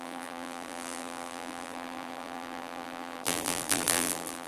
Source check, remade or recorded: remade